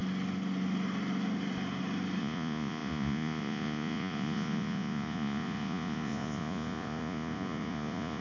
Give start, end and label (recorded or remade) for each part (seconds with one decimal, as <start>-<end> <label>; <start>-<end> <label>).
0.0-2.2 recorded; 2.2-8.2 remade